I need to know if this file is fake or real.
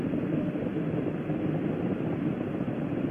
fake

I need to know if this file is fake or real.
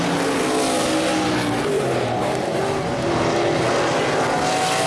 real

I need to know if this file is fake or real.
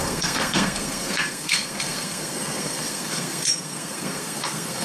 fake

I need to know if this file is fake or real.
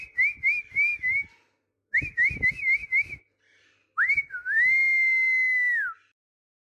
real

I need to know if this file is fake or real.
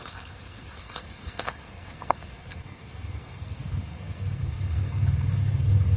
fake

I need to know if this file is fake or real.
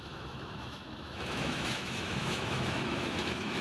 fake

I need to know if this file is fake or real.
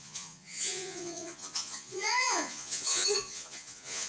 fake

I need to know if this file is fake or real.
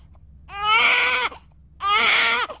real